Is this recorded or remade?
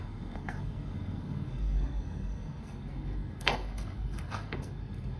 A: remade